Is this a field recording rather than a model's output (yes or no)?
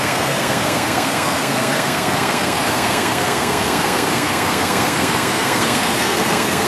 no